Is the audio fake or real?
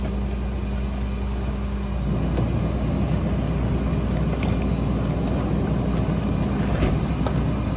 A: real